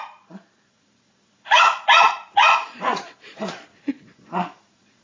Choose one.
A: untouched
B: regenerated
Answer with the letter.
B